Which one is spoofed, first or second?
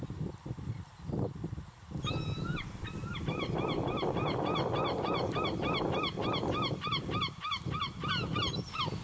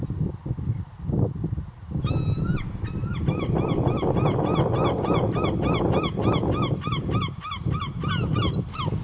first